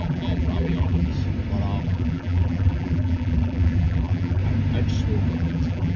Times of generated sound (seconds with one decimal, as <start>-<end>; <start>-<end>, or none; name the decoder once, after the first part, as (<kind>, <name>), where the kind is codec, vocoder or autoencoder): 0.0-1.1 (vocoder, BigVGAN v2); 1.8-4.4; 5.3-6.0